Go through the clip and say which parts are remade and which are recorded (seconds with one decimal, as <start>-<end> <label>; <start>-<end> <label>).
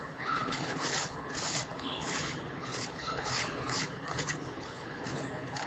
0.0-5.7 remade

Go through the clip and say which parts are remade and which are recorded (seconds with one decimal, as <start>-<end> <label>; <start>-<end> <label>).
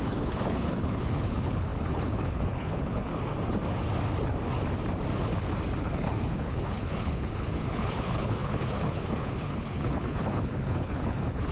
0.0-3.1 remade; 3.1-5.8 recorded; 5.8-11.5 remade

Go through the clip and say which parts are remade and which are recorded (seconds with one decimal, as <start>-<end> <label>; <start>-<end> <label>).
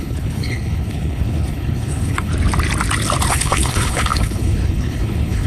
0.0-2.3 remade; 2.3-3.3 recorded; 3.3-5.5 remade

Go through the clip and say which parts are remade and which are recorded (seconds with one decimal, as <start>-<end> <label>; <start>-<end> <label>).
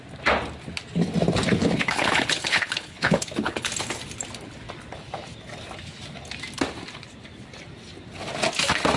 0.0-1.6 recorded; 1.6-3.7 remade; 3.7-9.0 recorded